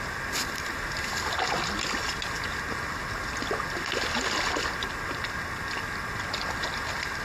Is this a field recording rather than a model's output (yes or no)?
yes